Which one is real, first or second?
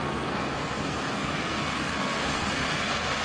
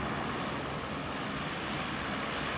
second